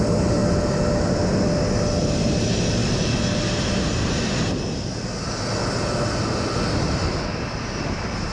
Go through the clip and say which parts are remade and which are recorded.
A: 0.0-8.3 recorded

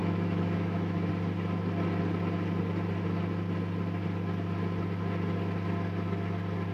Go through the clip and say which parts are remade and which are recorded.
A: 0.0-1.1 remade; 1.1-6.7 recorded